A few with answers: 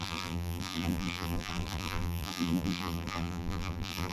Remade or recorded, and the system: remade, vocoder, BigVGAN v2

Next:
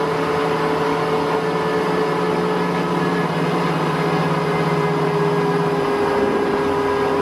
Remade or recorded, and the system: recorded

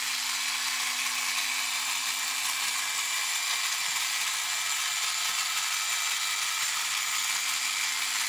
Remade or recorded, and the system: recorded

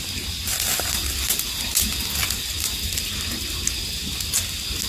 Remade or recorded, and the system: recorded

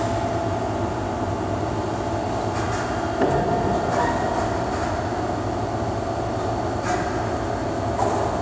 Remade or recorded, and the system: recorded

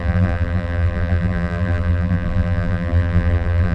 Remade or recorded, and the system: remade, vocoder, BigVGAN v2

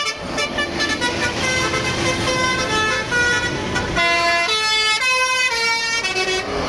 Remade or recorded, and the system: recorded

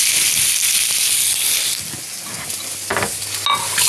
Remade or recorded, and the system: recorded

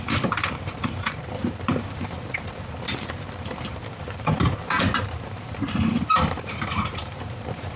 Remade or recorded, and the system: remade, vocoder, BigVGAN v2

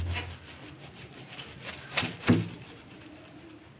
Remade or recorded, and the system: recorded